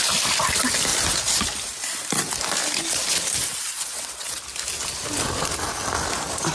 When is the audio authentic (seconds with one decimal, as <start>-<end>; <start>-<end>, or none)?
0.0-3.4; 4.4-6.5